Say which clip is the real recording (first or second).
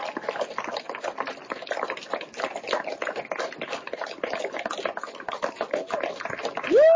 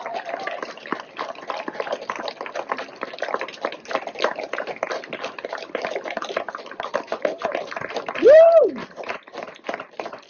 first